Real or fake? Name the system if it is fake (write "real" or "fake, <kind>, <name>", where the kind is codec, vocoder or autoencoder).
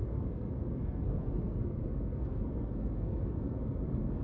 fake, codec, SNAC